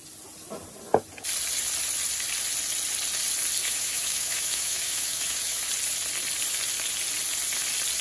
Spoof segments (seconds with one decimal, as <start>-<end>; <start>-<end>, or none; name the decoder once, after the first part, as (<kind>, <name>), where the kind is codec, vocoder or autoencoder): 3.6-5.6 (autoencoder, DAC-VAE)